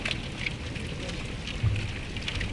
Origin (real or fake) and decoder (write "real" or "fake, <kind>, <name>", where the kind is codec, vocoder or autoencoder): real